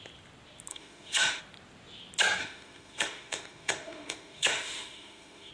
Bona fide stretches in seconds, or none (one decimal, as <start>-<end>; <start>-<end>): 0.0-0.7; 1.4-2.4